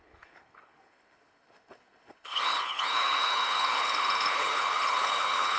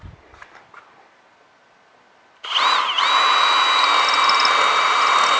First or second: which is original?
second